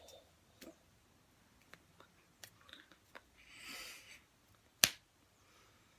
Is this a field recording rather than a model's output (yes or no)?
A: yes